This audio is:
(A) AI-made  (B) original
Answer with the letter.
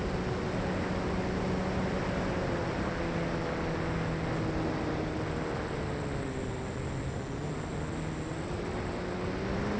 B